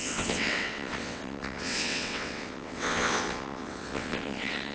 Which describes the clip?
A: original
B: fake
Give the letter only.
B